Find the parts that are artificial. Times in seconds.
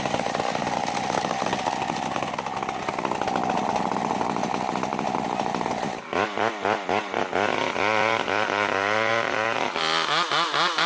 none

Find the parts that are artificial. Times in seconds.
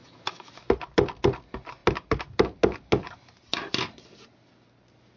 0.0-0.7 (autoencoder, DAC-VAE)